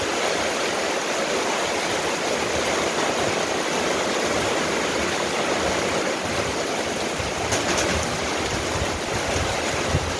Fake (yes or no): no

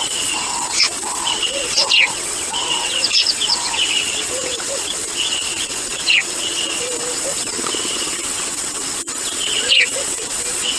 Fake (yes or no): yes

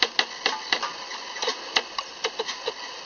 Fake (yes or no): no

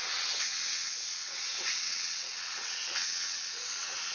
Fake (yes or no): yes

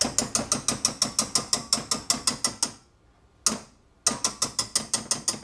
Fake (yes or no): no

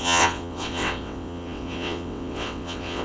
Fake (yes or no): yes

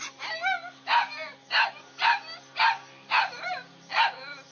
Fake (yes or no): no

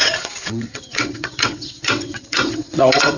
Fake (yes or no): yes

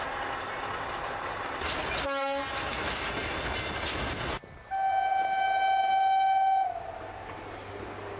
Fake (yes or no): no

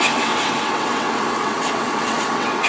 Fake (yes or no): yes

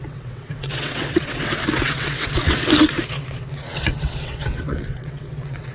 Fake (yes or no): yes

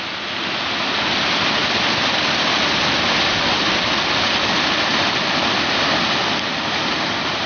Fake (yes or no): no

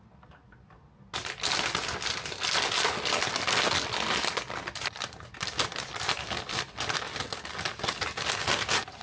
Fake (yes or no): no